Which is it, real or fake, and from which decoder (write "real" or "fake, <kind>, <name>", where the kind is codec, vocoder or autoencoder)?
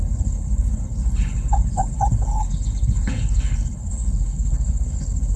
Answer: fake, codec, HILCodec